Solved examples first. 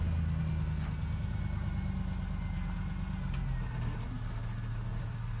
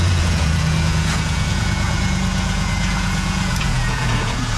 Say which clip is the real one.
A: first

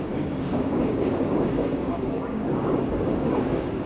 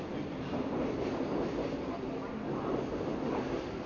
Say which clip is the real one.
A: second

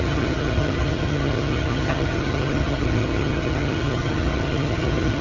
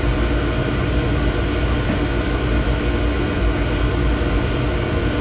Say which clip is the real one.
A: second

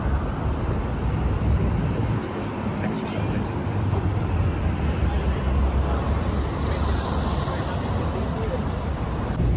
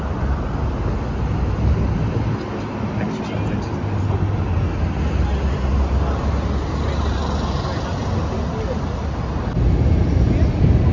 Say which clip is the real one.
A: second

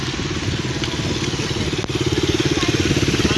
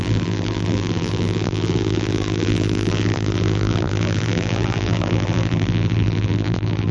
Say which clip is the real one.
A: first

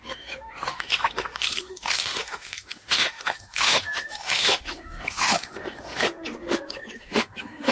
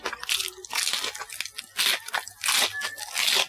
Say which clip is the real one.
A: second